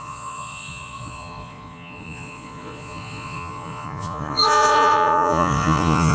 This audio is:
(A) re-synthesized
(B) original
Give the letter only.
A